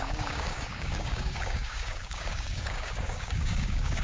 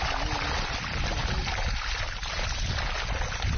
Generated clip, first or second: first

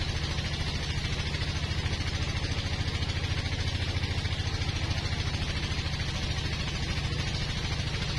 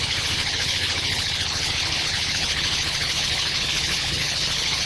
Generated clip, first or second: second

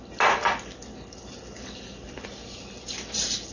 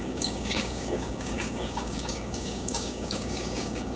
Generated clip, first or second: second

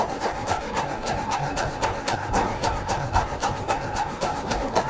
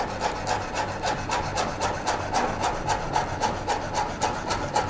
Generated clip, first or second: first